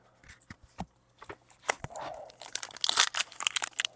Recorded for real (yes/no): yes